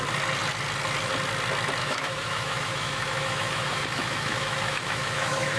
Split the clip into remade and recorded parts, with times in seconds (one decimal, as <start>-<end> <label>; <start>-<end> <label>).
0.0-1.8 recorded; 1.8-5.6 remade